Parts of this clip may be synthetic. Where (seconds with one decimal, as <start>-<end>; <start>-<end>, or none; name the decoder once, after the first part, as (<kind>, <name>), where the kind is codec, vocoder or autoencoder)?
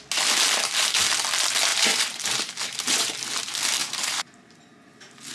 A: 1.7-3.3 (vocoder, BigVGAN v2); 3.8-4.6